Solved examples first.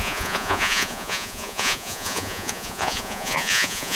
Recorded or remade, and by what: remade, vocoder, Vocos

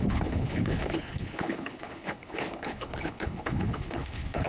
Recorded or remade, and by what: remade, codec, HILCodec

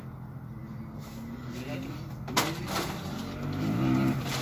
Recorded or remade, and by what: recorded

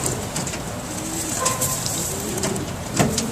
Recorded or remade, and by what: remade, vocoder, BigVGAN v2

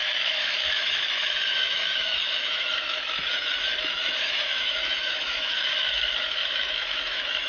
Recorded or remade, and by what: remade, autoencoder, DAC-VAE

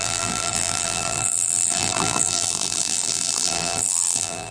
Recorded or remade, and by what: remade, vocoder, BigVGAN v2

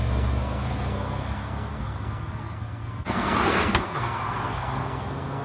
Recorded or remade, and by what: remade, codec, SNAC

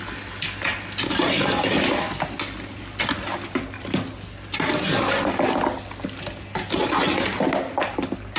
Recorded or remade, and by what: recorded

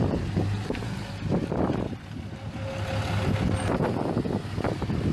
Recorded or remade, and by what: recorded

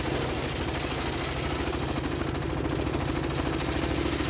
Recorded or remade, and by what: recorded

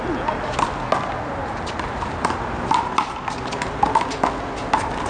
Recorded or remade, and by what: recorded